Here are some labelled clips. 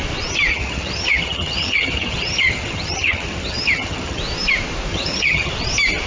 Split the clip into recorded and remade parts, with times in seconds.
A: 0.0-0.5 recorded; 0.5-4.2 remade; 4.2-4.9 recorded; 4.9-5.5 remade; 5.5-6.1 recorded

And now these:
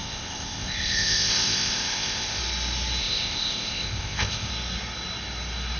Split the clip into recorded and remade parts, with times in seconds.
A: 0.0-2.4 remade; 2.4-3.0 recorded; 3.0-4.5 remade; 4.5-5.8 recorded

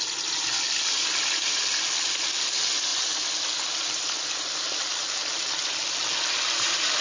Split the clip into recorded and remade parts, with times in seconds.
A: 0.0-7.0 recorded

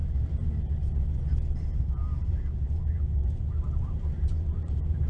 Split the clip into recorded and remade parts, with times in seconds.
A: 0.0-0.6 remade; 0.6-1.7 recorded; 1.7-5.1 remade

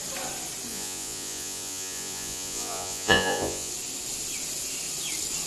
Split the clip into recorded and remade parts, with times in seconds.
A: 0.0-0.7 recorded; 0.7-3.7 remade; 3.7-5.5 recorded

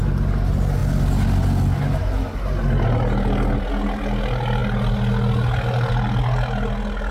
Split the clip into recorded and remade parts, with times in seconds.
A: 0.0-7.1 recorded

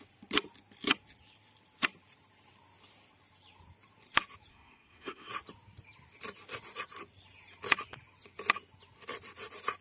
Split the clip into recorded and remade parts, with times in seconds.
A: 0.0-4.5 recorded; 4.5-5.3 remade; 5.3-9.8 recorded